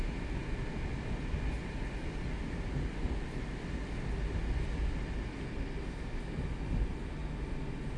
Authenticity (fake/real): real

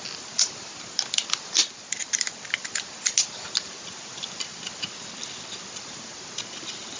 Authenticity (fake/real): real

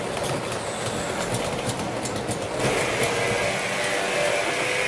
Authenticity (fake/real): real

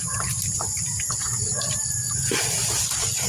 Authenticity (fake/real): fake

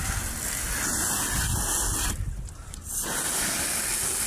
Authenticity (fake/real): real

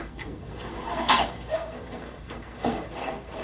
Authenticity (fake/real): fake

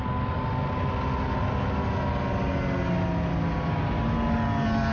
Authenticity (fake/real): real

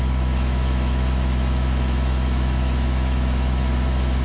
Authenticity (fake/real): fake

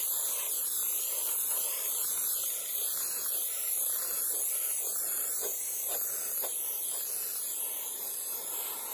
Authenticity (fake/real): real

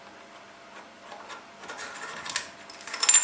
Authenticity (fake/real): real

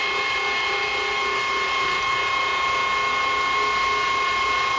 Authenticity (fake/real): real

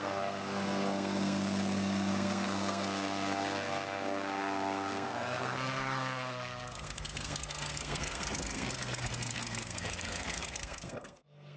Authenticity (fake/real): fake